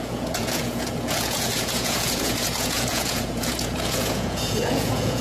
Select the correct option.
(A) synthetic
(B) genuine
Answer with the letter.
A